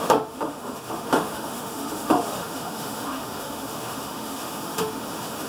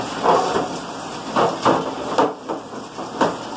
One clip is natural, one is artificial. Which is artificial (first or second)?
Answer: first